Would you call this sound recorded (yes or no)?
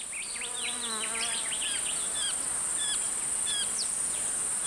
yes